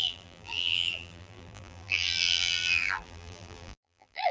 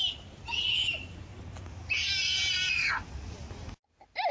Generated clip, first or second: first